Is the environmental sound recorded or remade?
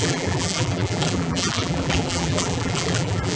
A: remade